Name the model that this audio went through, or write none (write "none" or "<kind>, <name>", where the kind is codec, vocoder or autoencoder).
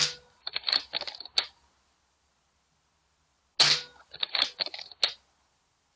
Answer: none